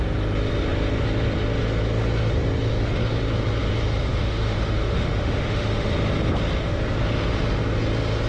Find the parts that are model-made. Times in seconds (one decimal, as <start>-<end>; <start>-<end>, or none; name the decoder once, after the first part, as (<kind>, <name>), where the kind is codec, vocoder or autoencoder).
4.1-5.9 (autoencoder, DAC-VAE)